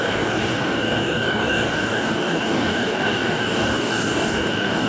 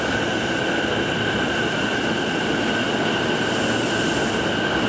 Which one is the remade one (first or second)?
first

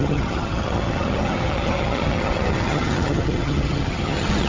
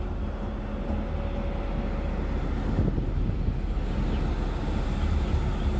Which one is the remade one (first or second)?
first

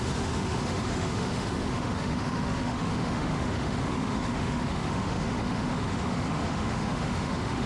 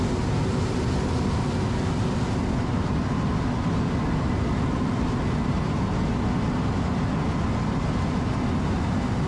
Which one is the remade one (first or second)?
first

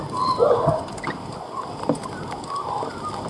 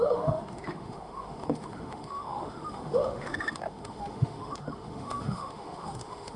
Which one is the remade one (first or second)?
second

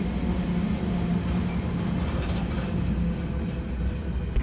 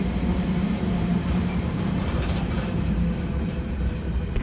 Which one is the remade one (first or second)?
second